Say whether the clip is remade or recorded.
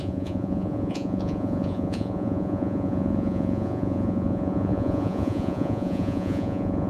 remade